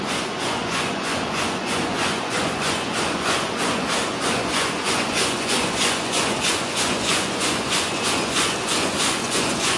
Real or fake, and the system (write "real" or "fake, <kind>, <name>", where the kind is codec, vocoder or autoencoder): fake, vocoder, Vocos